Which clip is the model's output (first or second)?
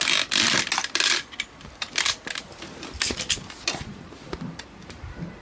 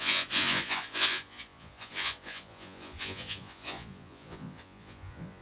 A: second